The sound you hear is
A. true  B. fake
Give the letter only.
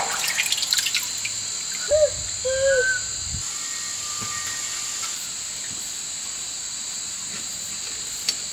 A